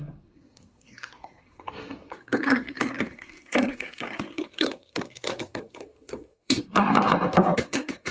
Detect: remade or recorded remade